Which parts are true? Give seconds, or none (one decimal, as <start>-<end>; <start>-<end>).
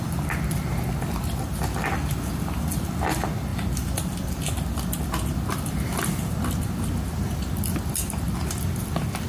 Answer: 0.0-9.3